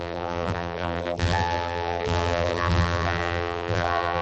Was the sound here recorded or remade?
remade